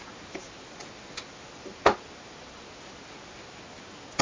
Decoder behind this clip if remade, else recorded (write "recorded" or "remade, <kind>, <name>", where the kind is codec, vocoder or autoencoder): recorded